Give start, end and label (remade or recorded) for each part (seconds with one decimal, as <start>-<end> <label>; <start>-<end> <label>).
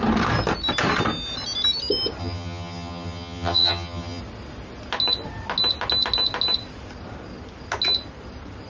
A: 0.0-2.2 recorded; 2.2-4.2 remade; 4.2-8.7 recorded